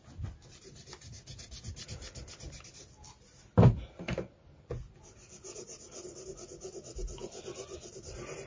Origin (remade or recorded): recorded